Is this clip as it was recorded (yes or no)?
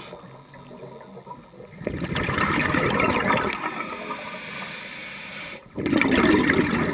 yes